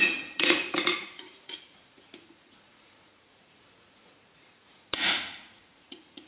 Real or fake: fake